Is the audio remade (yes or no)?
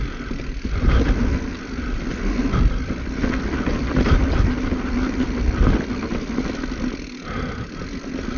no